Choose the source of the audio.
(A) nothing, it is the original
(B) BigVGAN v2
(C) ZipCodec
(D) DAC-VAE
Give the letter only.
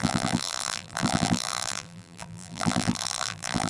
B